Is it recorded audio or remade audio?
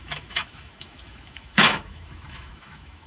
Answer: remade